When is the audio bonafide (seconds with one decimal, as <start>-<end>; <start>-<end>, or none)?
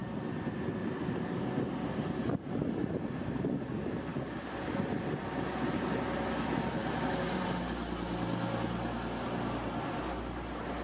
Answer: 0.0-4.1; 4.7-10.8